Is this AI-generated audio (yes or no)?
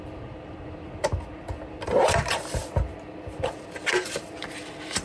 yes